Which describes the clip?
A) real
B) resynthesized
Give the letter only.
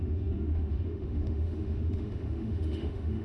B